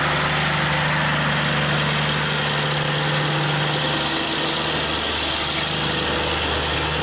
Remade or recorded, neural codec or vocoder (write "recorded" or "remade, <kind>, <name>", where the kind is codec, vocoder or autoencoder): recorded